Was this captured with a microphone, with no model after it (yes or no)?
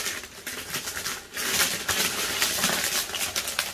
yes